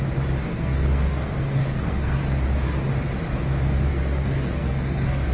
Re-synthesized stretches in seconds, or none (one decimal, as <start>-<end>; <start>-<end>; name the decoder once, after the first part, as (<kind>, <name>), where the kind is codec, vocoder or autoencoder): 0.5-2.2 (codec, SNAC); 3.9-5.3